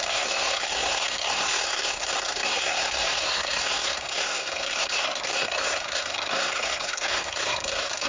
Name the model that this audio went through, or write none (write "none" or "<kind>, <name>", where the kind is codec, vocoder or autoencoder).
codec, SNAC